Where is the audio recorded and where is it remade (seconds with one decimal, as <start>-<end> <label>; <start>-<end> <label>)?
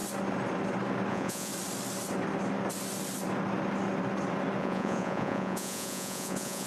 0.0-1.1 recorded; 1.1-1.5 remade; 1.5-4.6 recorded; 4.6-6.7 remade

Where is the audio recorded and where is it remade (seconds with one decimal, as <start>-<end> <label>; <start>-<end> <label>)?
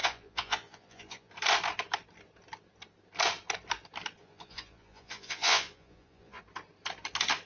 0.0-1.3 remade; 1.3-4.2 recorded; 4.2-6.4 remade; 6.4-7.5 recorded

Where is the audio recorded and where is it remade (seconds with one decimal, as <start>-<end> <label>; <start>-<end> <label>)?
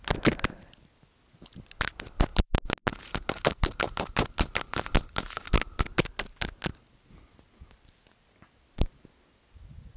0.0-10.0 recorded